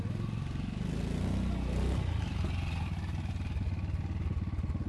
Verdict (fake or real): real